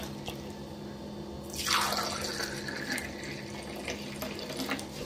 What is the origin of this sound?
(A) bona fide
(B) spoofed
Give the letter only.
A